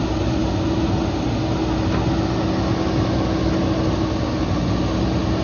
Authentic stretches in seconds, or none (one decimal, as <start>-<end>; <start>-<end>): 0.0-5.4